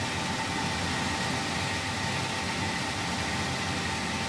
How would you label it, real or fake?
real